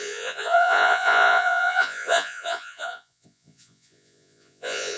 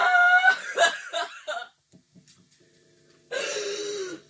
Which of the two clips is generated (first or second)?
first